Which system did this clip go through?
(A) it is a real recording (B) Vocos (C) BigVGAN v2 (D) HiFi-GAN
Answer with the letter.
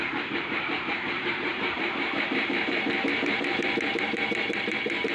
C